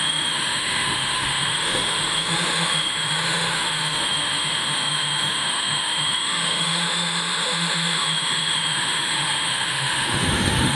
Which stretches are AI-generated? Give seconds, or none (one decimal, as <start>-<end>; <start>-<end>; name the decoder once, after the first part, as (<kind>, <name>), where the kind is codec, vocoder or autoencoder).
0.0-10.7 (autoencoder, DAC-VAE)